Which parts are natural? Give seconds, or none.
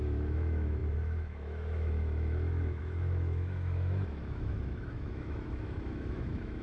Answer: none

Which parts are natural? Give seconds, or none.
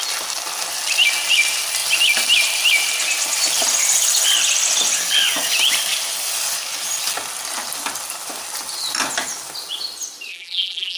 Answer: 0.0-10.3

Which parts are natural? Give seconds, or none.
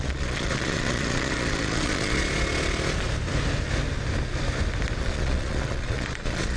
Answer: 2.2-5.0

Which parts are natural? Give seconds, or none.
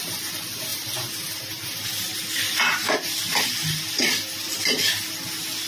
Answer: 0.0-5.7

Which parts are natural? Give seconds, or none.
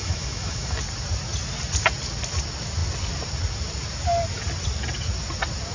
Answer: 0.8-5.7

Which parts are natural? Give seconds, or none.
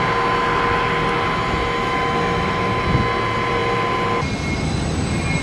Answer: 0.0-1.8; 2.8-5.4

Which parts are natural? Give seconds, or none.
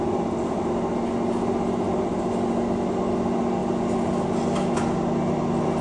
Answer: 0.0-5.8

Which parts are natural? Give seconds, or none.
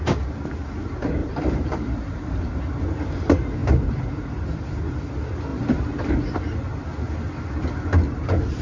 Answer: 0.0-1.2; 2.9-3.6; 5.0-5.5; 6.4-8.6